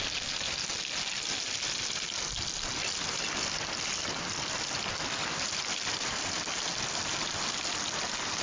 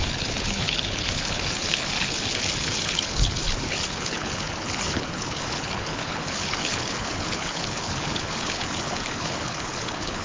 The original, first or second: first